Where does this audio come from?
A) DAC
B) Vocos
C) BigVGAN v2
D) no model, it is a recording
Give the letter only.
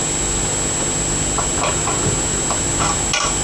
D